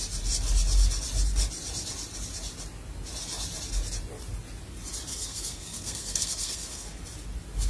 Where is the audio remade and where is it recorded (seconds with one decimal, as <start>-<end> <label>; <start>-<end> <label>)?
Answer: 0.0-5.1 recorded; 5.1-7.0 remade; 7.0-7.7 recorded